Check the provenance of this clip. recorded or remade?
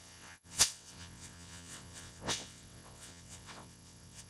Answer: remade